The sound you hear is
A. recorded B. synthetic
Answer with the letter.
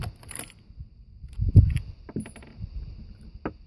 A